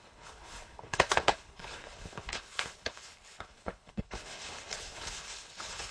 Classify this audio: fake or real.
fake